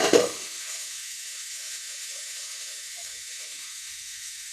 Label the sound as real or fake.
fake